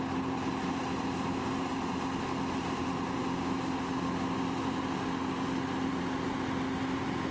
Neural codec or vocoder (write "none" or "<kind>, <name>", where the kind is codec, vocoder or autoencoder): none